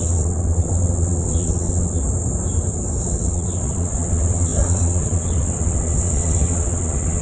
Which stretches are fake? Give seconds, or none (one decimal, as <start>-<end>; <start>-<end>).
0.0-2.0; 3.0-7.2